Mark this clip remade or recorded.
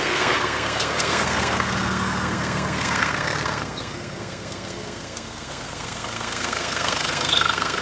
remade